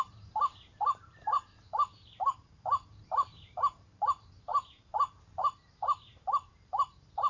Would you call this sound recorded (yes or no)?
no